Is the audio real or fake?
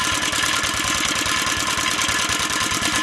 real